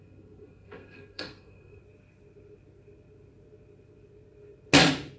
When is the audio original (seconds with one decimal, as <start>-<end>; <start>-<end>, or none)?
1.8-5.2